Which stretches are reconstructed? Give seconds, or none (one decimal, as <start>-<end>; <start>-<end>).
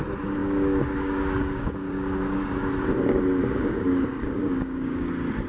0.4-2.7; 3.4-5.1